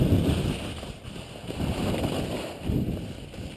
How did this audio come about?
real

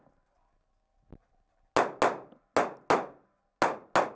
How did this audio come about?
real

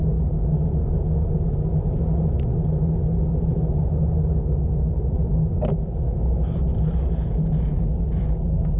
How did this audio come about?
real